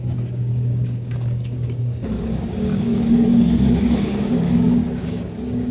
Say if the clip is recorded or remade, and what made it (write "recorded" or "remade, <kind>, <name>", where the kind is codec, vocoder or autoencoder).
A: remade, codec, DAC